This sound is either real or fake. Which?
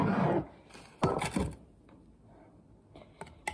real